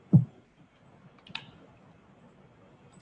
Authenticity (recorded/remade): recorded